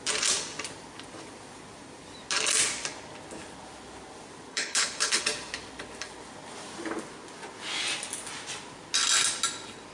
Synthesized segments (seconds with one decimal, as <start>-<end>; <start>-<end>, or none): 4.5-5.2